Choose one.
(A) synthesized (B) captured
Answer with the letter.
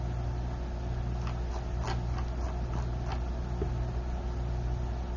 B